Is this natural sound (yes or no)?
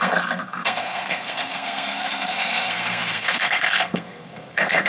no